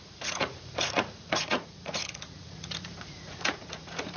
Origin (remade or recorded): remade